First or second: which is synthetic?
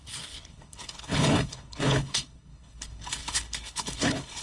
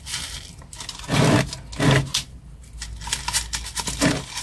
first